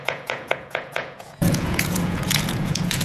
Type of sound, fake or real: fake